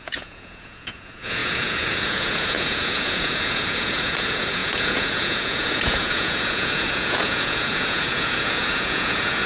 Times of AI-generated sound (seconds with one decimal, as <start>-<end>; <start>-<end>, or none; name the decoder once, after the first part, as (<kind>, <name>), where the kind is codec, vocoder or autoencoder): 0.0-9.5 (vocoder, Vocos)